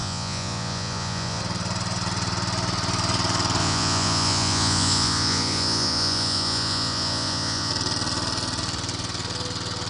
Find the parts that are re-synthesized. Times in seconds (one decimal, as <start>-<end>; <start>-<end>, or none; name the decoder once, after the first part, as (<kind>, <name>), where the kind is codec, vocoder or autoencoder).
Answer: 0.0-1.4 (vocoder, Vocos); 3.6-7.7